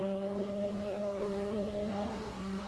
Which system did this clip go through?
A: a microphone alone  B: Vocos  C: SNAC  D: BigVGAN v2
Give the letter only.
C